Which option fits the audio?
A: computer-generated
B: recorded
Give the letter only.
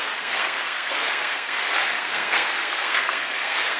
A